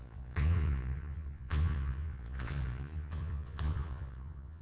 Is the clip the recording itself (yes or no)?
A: no